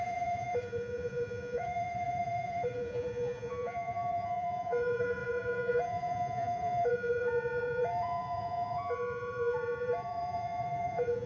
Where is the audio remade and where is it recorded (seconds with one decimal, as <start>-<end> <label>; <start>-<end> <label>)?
0.0-11.3 remade